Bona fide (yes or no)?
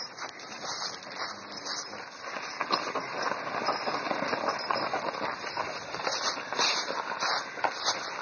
yes